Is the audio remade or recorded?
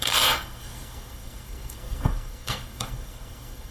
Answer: remade